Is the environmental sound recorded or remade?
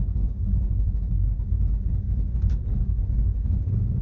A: remade